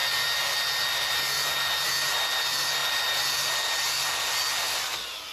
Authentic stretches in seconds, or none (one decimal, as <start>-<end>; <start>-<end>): 0.0-5.3